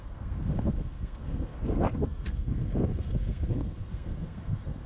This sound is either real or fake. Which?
fake